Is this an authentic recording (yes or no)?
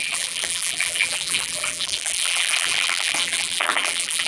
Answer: no